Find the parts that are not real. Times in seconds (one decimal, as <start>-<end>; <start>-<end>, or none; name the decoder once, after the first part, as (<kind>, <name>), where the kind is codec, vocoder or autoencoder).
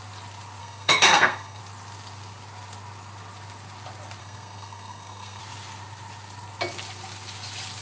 0.6-1.6 (codec, SNAC); 4.2-5.4